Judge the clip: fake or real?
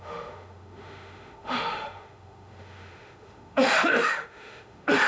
fake